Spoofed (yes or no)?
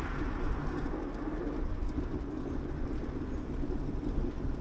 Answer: no